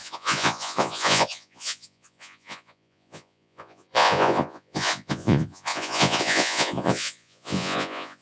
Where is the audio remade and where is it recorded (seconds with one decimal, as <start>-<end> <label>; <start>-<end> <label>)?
0.0-8.2 remade